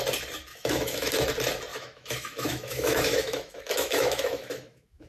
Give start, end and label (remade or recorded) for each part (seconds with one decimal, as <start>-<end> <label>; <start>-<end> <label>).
0.0-0.5 recorded; 0.5-1.1 remade; 1.1-1.7 recorded; 1.7-5.1 remade